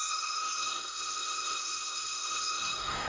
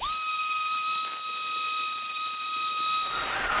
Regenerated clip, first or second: first